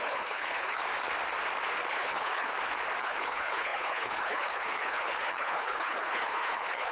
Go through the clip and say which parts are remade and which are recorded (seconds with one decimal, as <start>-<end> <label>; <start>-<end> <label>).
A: 0.0-0.8 remade; 0.8-1.9 recorded; 1.9-2.5 remade; 2.5-3.0 recorded; 3.0-6.9 remade